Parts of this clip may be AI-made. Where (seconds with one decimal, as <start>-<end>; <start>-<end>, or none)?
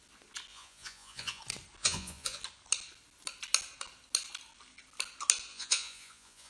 0.5-1.4; 1.8-2.4; 5.5-6.5